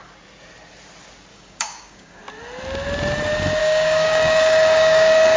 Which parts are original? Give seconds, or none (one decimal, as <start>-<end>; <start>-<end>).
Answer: 0.0-1.3; 2.2-3.6